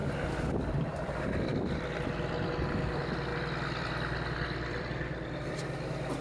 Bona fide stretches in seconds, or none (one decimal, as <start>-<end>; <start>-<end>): 1.1-3.3; 5.5-6.2